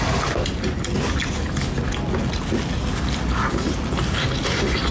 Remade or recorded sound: recorded